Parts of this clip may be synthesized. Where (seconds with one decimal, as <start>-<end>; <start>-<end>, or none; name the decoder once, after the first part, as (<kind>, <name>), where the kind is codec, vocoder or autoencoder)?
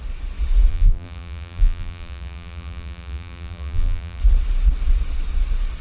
0.7-4.2 (vocoder, BigVGAN v2)